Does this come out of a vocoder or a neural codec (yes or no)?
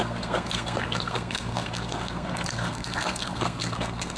yes